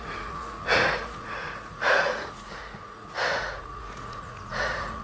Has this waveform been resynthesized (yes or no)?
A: yes